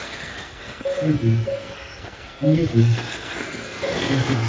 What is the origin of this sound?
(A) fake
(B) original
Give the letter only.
A